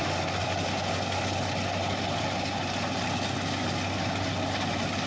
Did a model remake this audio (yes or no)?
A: no